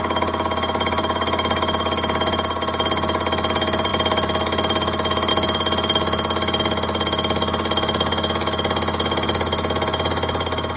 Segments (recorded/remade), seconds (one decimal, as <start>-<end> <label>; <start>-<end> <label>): 0.0-10.8 recorded